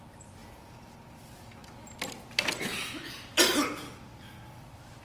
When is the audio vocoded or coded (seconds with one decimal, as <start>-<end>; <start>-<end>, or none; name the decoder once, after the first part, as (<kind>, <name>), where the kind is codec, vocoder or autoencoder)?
0.4-0.9 (vocoder, Vocos)